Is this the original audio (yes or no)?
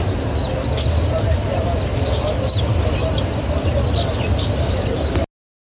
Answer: yes